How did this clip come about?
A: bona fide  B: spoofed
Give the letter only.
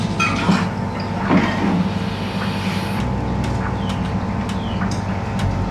A